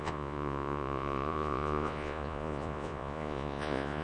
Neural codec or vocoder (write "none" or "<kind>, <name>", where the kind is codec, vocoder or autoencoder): vocoder, Vocos